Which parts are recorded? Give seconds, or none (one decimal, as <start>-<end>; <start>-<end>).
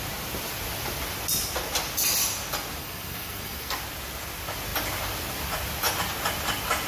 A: 0.0-2.8; 3.8-6.9